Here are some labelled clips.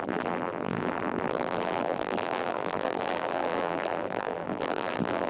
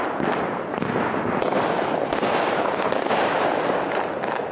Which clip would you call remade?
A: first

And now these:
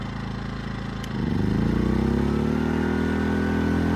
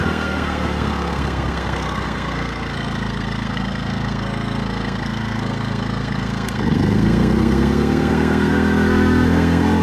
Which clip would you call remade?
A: second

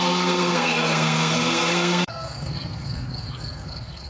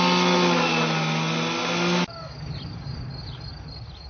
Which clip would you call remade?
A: first